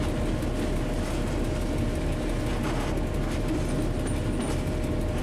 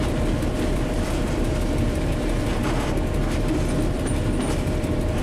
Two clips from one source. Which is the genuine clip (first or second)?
first